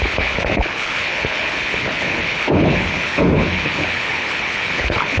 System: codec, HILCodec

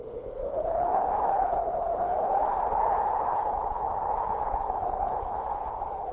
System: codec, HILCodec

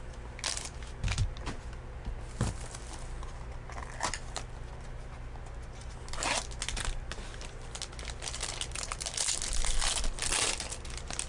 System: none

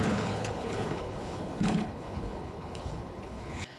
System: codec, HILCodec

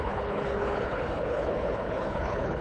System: codec, HILCodec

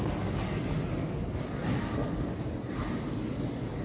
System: none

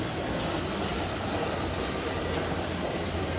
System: none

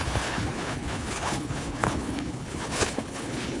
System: codec, HILCodec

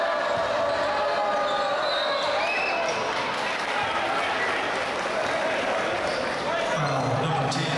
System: none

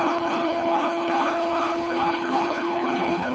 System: codec, HILCodec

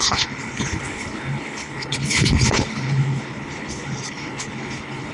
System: codec, HILCodec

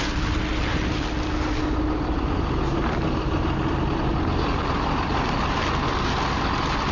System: none